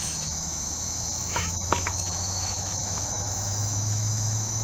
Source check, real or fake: fake